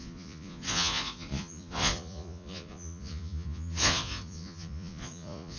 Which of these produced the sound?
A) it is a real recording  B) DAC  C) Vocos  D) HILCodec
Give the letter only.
C